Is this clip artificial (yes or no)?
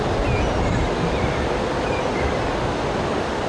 no